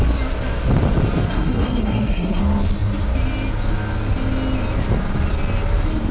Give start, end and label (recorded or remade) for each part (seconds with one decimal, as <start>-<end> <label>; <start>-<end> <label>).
0.0-1.3 recorded; 1.3-2.4 remade; 2.4-6.1 recorded

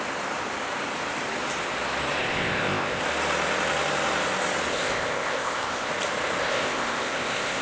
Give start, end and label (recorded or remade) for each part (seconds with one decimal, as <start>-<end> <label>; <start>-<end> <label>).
0.0-2.2 recorded; 2.2-3.0 remade; 3.0-4.7 recorded; 4.7-5.9 remade; 5.9-6.4 recorded; 6.4-7.6 remade

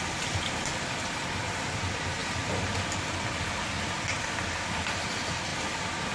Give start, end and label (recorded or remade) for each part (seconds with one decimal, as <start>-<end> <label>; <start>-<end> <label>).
0.0-6.1 recorded

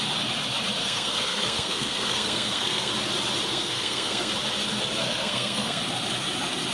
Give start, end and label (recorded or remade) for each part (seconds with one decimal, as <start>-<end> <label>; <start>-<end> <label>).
0.0-0.8 recorded; 0.8-2.9 remade; 2.9-3.5 recorded; 3.5-4.3 remade; 4.3-5.0 recorded; 5.0-5.8 remade; 5.8-6.7 recorded